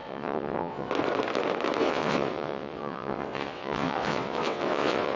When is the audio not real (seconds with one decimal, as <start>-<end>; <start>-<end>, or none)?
0.0-0.9; 1.8-5.2